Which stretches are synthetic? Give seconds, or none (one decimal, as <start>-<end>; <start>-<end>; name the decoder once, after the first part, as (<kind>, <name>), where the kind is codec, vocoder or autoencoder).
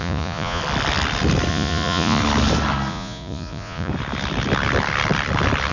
0.0-0.6 (vocoder, Vocos); 1.5-2.2; 2.9-3.9